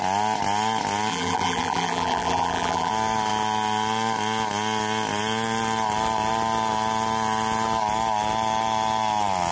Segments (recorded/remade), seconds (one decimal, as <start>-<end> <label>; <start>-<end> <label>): 0.0-1.1 recorded; 1.1-2.9 remade; 2.9-9.5 recorded